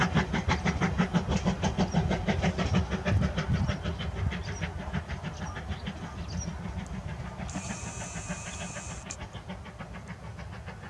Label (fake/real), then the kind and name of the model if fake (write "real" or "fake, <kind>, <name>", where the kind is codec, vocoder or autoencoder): real